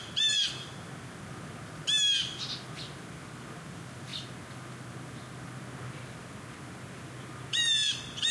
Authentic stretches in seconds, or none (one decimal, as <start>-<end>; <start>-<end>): 0.0-8.3

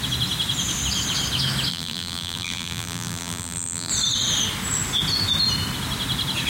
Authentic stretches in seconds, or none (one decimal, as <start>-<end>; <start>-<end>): 0.0-1.7; 3.9-6.5